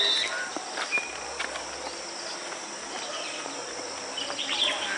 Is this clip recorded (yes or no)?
yes